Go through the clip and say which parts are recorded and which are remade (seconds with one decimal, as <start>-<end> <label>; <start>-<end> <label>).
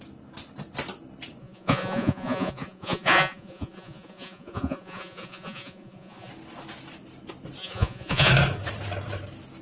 0.0-1.4 recorded; 1.4-6.3 remade; 6.3-7.6 recorded; 7.6-8.3 remade; 8.3-9.6 recorded